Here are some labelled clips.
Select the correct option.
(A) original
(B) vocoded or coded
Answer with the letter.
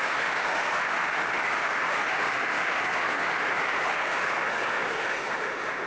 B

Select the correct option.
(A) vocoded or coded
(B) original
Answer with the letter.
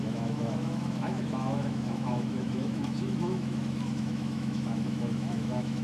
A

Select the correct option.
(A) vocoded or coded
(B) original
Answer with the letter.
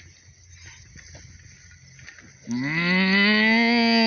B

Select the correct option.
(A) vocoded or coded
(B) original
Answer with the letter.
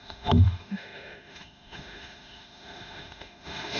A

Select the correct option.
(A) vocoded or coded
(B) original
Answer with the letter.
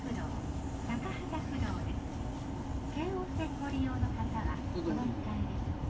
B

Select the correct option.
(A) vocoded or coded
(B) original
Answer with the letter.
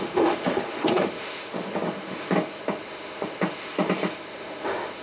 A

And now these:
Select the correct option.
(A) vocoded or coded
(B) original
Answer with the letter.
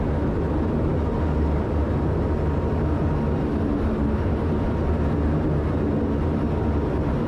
B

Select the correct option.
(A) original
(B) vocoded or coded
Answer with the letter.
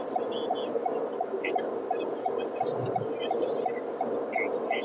A